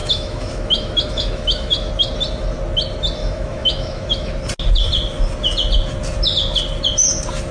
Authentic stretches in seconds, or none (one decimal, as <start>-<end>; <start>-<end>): 1.9-3.2; 4.3-7.5